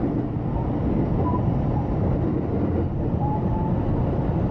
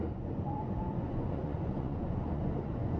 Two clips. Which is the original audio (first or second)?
first